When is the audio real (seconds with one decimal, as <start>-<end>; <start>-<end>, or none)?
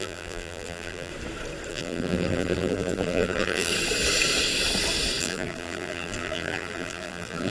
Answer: 1.1-1.7; 3.7-5.2